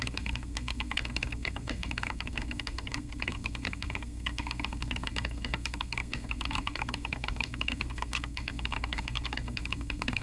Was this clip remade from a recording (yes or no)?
yes